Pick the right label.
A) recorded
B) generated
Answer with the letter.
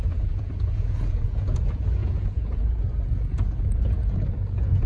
B